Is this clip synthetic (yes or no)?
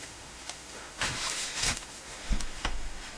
yes